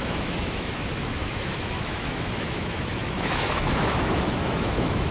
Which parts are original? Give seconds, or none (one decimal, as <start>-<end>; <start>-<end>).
none